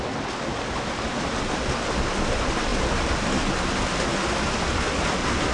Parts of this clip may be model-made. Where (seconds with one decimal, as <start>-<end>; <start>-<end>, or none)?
2.7-4.3